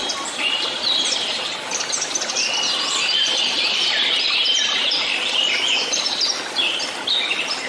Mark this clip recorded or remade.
remade